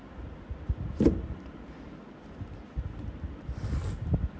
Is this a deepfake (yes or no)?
no